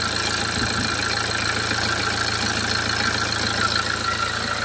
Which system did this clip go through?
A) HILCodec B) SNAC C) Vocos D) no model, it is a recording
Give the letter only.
D